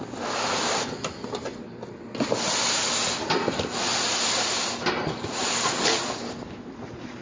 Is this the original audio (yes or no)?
yes